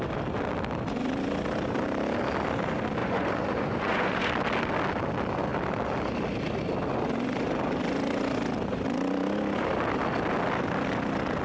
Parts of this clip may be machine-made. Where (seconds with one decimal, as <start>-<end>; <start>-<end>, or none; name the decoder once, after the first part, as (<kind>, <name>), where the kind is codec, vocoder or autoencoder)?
3.0-4.3 (vocoder, Vocos)